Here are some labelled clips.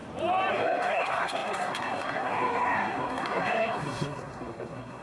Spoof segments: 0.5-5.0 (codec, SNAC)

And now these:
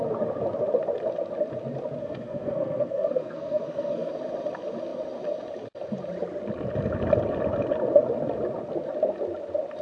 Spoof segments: 2.0-4.1 (codec, SNAC)

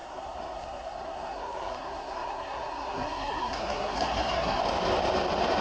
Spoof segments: 0.0-4.6 (codec, SNAC)

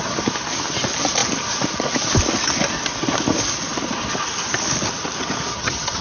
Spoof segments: 5.5-6.0 (vocoder, HiFi-GAN)

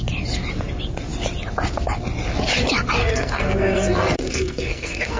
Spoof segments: 3.0-5.2 (codec, SNAC)

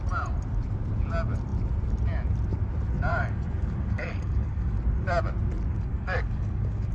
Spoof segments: 3.1-4.8 (codec, DAC); 5.7-6.9

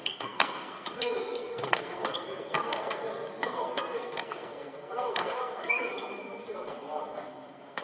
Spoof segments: 0.0-7.8 (codec, SNAC)